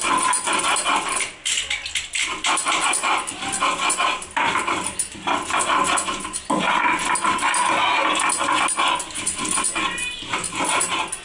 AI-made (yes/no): no